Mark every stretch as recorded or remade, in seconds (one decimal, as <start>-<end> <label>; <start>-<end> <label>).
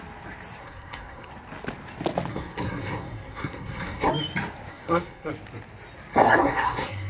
0.0-0.6 recorded; 0.6-1.3 remade; 1.3-2.3 recorded; 2.3-4.1 remade; 4.1-4.7 recorded; 4.7-5.3 remade; 5.3-6.1 recorded; 6.1-7.1 remade